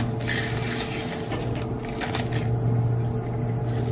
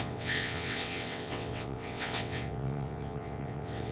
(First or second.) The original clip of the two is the first